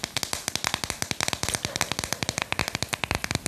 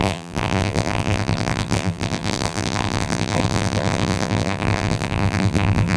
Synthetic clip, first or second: second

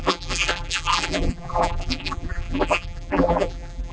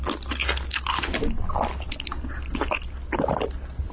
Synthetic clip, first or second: first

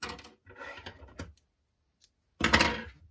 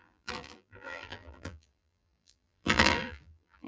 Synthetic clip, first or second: second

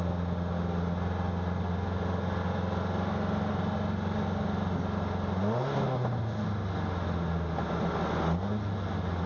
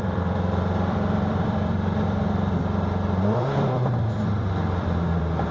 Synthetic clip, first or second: second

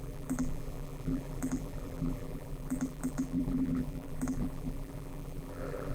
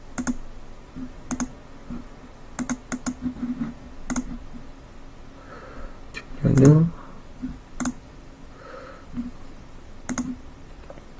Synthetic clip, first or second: first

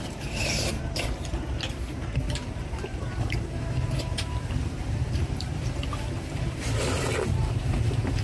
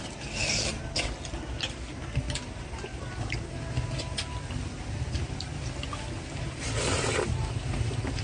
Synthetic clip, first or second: first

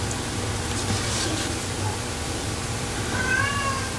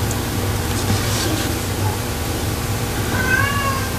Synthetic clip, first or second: first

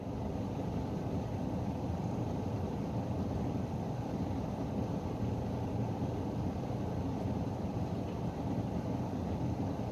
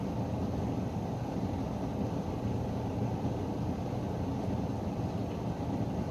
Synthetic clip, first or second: first